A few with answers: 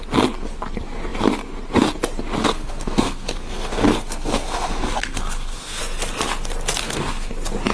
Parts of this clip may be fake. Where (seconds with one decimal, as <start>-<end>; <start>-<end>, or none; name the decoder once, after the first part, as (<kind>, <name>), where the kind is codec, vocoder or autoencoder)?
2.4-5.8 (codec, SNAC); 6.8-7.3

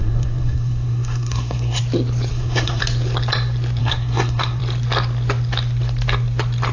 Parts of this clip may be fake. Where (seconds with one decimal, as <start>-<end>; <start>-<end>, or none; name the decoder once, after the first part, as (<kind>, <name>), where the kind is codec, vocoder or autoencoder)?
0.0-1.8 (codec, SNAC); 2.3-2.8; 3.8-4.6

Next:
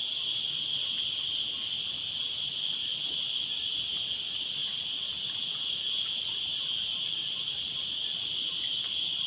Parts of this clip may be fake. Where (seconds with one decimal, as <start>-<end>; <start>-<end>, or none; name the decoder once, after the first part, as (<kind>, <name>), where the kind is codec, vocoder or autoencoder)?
none